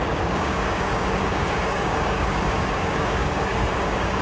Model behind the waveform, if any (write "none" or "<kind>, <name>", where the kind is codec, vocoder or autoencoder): codec, DAC